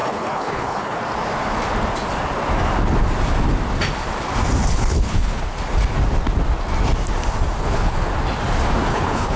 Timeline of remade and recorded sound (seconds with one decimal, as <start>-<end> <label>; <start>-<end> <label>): 0.0-1.0 remade; 1.0-4.7 recorded; 4.7-5.4 remade; 5.4-7.6 recorded; 7.6-8.1 remade; 8.1-8.9 recorded; 8.9-9.4 remade